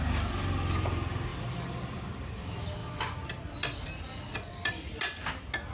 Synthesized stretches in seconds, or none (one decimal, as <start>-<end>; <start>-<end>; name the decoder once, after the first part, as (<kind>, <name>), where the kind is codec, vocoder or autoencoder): none